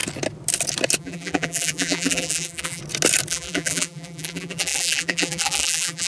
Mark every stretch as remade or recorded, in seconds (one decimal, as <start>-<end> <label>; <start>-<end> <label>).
0.0-1.0 recorded; 1.0-2.8 remade; 2.8-3.3 recorded; 3.3-6.1 remade